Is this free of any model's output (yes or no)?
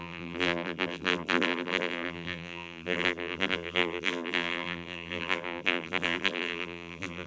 no